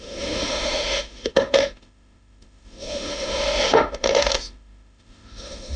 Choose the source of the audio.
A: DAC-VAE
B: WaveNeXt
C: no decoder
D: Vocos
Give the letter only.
A